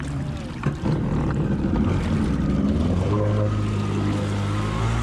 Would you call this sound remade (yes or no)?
no